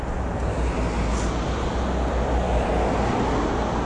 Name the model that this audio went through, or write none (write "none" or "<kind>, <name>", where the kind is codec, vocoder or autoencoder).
none